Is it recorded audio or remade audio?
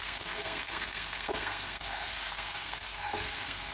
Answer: remade